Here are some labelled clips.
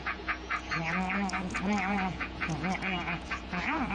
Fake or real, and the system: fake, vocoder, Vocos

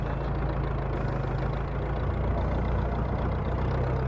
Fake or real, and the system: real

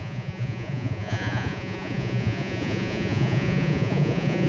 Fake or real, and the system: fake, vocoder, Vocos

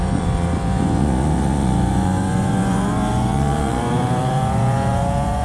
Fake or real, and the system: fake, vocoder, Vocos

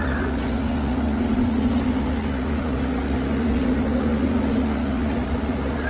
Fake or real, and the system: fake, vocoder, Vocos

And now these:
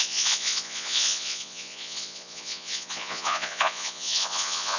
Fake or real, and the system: fake, vocoder, Vocos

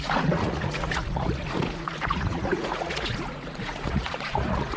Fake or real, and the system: fake, vocoder, Vocos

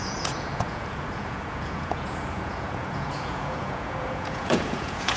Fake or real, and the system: fake, vocoder, Vocos